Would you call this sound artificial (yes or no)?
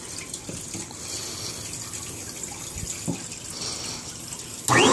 no